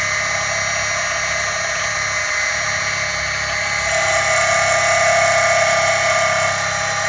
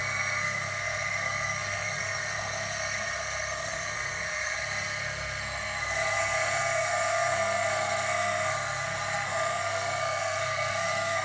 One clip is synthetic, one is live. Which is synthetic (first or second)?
second